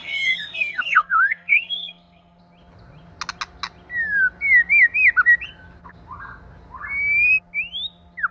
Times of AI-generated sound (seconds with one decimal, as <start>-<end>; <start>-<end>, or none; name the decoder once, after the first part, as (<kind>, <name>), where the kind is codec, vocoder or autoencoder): 0.0-2.4 (codec, SNAC)